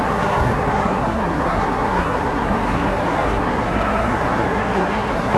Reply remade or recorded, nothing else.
remade